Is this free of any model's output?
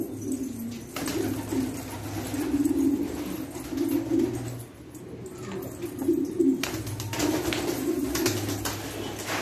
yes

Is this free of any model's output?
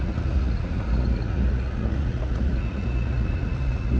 no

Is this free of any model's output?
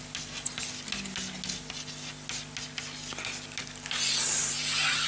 yes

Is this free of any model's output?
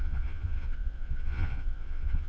no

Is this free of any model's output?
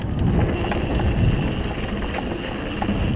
yes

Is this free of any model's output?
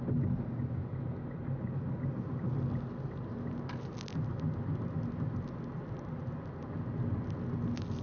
yes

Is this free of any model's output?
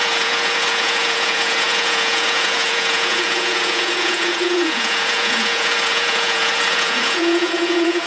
no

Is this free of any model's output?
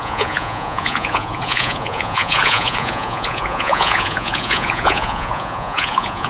no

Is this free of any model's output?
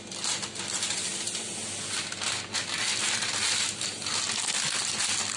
yes